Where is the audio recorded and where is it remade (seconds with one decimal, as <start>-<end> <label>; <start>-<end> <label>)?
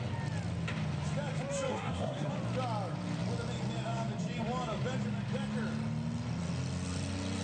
0.0-1.7 recorded; 1.7-2.3 remade; 2.3-7.4 recorded